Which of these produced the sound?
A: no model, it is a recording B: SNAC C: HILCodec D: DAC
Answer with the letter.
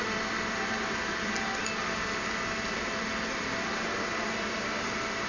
A